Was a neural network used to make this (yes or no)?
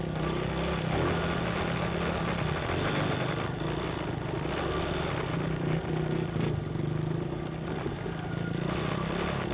no